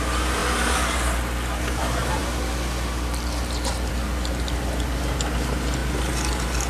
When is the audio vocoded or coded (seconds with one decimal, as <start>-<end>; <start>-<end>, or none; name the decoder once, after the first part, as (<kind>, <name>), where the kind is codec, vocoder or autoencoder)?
none